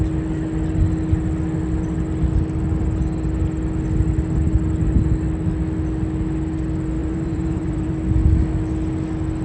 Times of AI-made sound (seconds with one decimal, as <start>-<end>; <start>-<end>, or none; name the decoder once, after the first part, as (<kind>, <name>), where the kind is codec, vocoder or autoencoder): 7.0-7.9 (vocoder, BigVGAN v2)